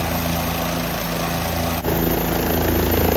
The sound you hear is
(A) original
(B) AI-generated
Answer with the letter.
A